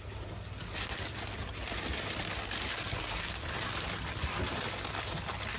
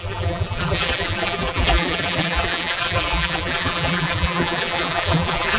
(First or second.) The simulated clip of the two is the second